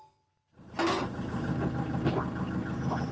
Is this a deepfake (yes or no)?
no